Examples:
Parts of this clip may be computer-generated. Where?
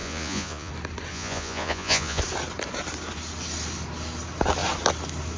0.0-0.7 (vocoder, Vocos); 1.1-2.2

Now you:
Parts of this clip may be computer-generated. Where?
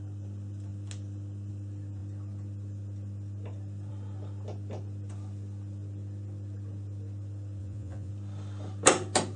7.6-8.1 (vocoder, Vocos)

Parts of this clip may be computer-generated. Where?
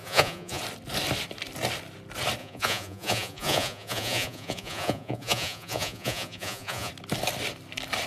0.0-0.6 (vocoder, Vocos); 2.4-6.9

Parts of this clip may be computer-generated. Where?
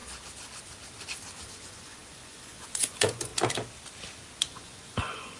1.5-3.3 (vocoder, Vocos); 4.4-5.4